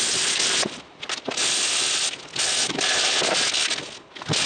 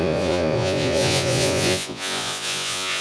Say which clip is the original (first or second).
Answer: first